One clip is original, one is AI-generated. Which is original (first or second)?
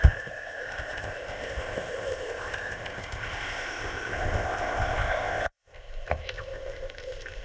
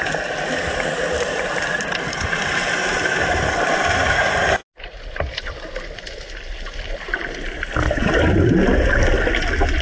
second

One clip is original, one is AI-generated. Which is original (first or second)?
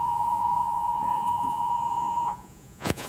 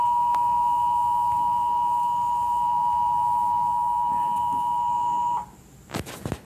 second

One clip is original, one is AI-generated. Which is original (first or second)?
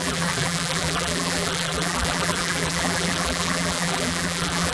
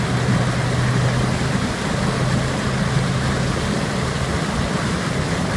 second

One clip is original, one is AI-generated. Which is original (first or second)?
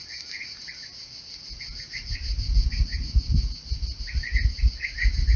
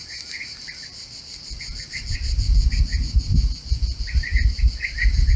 first